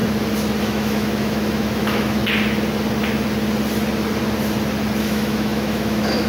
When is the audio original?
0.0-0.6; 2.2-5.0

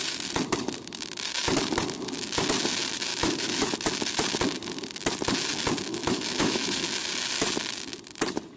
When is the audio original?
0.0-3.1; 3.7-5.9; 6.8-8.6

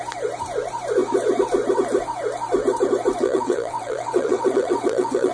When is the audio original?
0.0-3.2

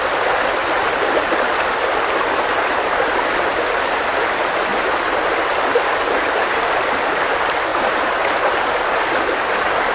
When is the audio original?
0.0-7.7; 8.8-9.9

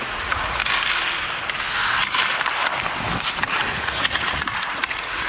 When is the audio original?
0.6-3.8

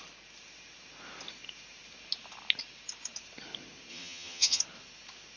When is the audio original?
0.0-3.9; 4.6-5.4